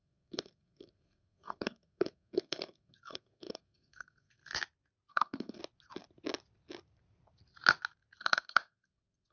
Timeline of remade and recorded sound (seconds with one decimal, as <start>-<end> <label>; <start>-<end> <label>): 0.0-4.4 remade; 4.4-5.1 recorded; 5.1-5.6 remade; 5.6-8.2 recorded; 8.2-9.3 remade